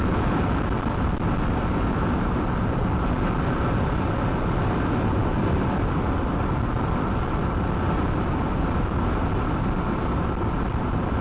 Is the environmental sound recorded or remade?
recorded